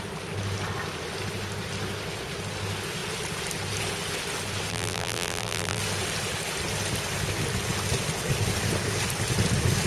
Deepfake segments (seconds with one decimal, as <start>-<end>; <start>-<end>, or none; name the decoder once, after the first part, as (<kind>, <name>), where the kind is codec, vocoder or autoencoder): 4.7-5.8 (vocoder, BigVGAN v2)